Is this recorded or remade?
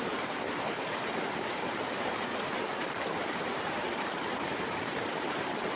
remade